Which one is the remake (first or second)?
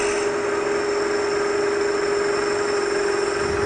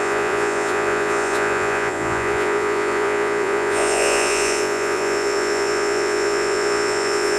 second